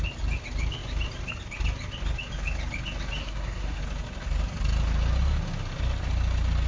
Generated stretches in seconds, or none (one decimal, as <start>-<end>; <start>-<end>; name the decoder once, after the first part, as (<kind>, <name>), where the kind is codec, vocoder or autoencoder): 3.2-3.8 (codec, SNAC)